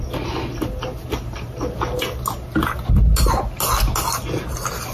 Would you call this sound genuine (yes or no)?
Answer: yes